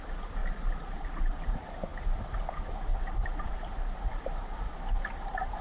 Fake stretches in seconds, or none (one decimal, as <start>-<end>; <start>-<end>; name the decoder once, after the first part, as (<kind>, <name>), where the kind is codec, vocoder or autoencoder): 2.9-4.7 (vocoder, BigVGAN v2)

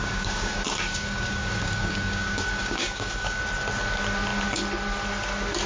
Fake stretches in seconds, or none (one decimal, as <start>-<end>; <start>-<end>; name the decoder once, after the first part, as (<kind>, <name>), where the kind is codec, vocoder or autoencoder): 0.0-3.4 (codec, DAC)

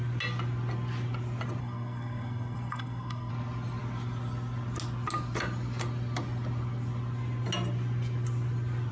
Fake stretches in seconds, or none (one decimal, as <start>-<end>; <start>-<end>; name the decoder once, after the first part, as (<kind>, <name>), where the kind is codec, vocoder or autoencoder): 1.6-3.3 (codec, SNAC)

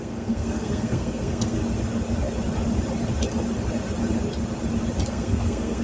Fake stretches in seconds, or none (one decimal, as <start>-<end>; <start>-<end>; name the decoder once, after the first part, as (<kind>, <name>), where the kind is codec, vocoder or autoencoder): 0.0-1.6 (codec, SNAC); 5.1-5.8

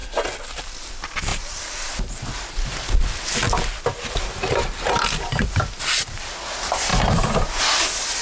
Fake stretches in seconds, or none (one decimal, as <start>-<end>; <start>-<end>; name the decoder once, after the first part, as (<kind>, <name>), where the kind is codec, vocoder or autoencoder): 1.3-6.2 (vocoder, BigVGAN v2); 6.9-7.6

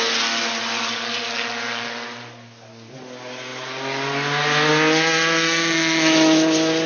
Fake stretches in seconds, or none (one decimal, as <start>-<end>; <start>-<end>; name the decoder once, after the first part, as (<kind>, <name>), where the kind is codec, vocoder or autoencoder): none